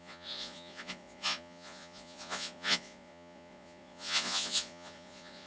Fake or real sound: fake